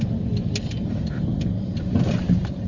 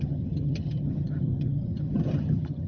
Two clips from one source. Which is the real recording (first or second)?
first